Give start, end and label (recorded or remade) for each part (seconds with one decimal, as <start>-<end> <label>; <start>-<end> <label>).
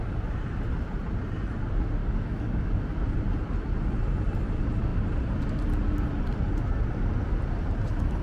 0.0-2.0 recorded; 2.0-2.7 remade; 2.7-8.2 recorded